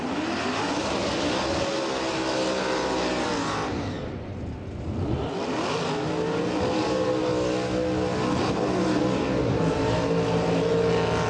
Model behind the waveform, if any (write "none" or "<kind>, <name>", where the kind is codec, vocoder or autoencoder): none